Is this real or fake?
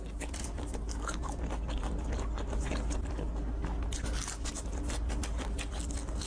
real